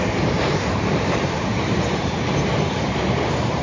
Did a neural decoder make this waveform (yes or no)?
yes